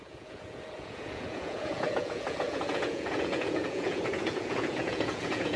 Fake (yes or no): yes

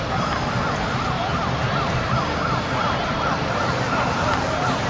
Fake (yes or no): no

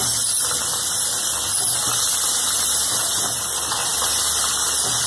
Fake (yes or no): no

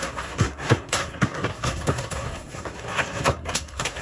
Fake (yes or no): yes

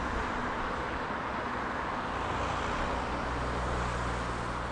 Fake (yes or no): no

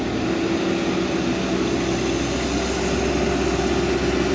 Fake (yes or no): no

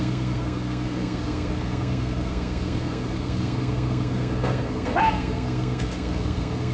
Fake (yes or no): yes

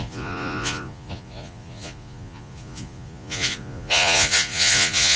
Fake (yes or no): yes